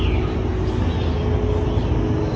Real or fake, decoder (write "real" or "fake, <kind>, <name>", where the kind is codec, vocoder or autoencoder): real